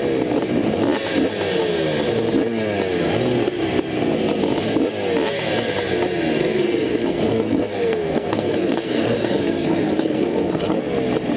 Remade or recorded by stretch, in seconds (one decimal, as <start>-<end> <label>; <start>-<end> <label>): 0.0-6.4 recorded; 6.4-10.8 remade; 10.8-11.4 recorded